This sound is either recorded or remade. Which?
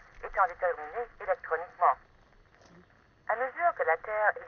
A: recorded